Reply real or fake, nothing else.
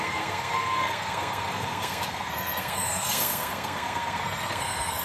fake